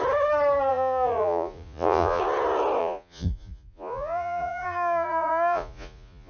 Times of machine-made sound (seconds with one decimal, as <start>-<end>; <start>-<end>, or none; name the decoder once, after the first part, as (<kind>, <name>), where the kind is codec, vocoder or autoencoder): 0.7-2.2 (vocoder, Vocos); 2.8-6.3